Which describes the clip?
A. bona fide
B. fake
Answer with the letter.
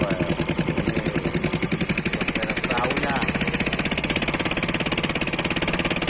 A